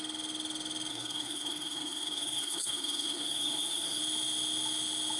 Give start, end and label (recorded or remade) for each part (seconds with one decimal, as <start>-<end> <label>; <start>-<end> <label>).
0.0-0.9 recorded; 0.9-4.0 remade; 4.0-5.2 recorded